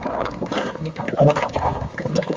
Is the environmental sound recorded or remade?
remade